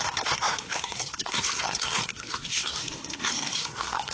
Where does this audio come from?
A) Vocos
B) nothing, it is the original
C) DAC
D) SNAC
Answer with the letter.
D